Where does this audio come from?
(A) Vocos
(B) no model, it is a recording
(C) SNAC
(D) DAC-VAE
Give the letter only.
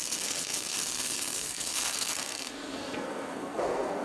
C